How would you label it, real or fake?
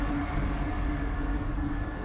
fake